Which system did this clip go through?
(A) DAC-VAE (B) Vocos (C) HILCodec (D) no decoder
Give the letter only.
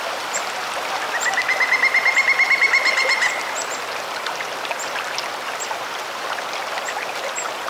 D